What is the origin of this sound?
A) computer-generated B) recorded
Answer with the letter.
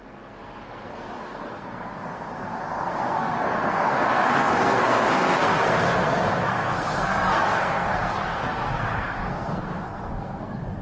A